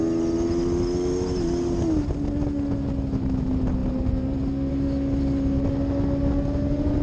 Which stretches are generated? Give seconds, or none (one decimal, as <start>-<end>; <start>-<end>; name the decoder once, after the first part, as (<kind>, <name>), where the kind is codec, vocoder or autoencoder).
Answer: none